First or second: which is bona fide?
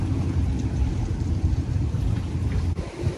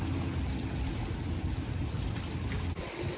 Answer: second